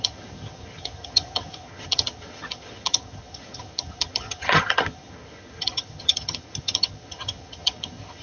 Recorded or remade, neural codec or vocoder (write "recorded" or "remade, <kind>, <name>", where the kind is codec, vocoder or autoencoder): remade, vocoder, HiFi-GAN